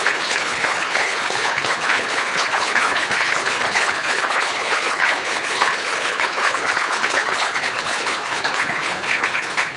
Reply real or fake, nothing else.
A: fake